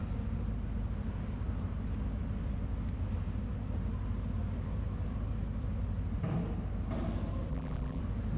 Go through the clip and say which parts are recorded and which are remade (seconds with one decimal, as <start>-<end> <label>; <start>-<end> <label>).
0.0-7.5 recorded; 7.5-8.0 remade; 8.0-8.4 recorded